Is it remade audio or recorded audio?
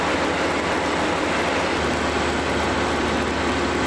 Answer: recorded